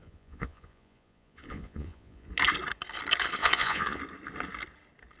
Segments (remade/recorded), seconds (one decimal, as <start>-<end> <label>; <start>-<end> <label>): 0.0-2.3 remade; 2.3-3.4 recorded; 3.4-4.0 remade; 4.0-5.2 recorded

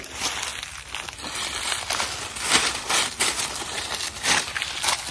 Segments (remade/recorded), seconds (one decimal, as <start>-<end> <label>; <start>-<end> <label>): 0.0-5.1 recorded

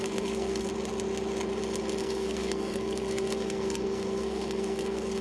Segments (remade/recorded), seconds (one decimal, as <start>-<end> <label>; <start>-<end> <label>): 0.0-0.7 remade; 0.7-2.0 recorded; 2.0-5.2 remade

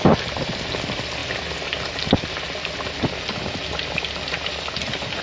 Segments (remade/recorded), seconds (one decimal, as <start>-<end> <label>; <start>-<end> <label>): 0.0-5.2 recorded

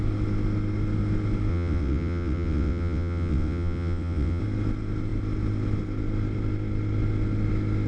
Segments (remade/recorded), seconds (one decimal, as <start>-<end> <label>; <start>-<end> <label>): 0.0-1.5 recorded; 1.5-4.4 remade; 4.4-7.9 recorded

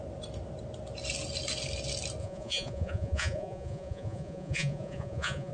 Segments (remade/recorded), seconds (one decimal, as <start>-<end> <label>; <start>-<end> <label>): 0.0-2.2 recorded; 2.2-5.5 remade

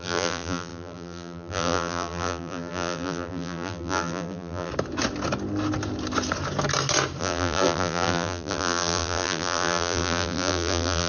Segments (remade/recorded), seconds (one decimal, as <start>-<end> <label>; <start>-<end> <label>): 0.0-4.7 remade; 4.7-7.2 recorded; 7.2-11.1 remade

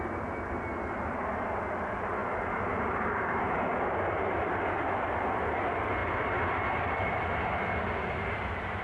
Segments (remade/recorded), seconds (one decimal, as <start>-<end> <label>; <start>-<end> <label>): 0.0-8.8 recorded